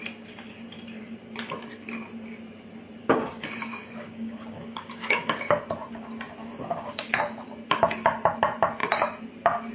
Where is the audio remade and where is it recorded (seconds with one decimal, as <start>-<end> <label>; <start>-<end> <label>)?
0.0-3.0 recorded; 3.0-5.6 remade; 5.6-6.4 recorded; 6.4-7.1 remade; 7.1-9.7 recorded

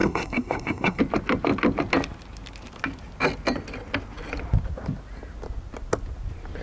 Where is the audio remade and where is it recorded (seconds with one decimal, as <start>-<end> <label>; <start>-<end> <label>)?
0.0-1.0 remade; 1.0-6.6 recorded

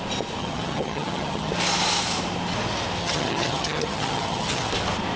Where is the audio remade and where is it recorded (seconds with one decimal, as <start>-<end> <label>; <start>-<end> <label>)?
0.0-0.4 recorded; 0.4-1.5 remade; 1.5-3.0 recorded; 3.0-4.7 remade; 4.7-5.2 recorded

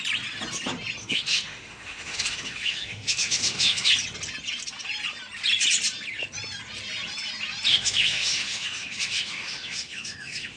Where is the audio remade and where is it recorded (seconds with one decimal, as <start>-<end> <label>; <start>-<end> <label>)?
0.0-1.0 recorded; 1.0-3.9 remade; 3.9-7.7 recorded; 7.7-10.6 remade